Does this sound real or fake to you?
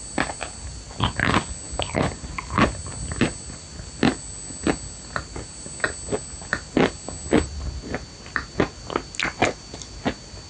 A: real